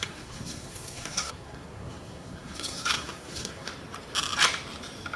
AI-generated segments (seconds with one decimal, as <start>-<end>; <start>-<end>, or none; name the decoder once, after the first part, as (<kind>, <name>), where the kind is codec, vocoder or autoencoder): 0.0-3.7 (codec, SNAC)